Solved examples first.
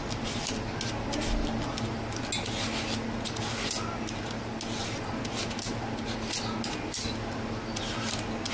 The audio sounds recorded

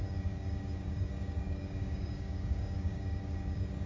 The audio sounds remade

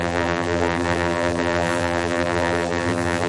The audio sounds remade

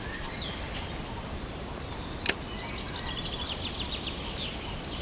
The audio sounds recorded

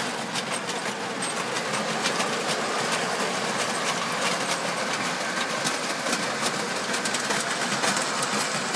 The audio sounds recorded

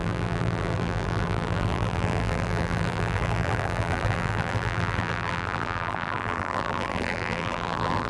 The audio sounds remade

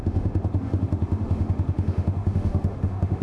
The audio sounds remade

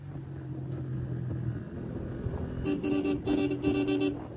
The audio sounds recorded